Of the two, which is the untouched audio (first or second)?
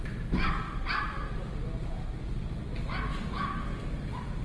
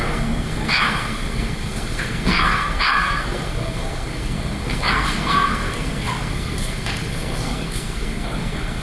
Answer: first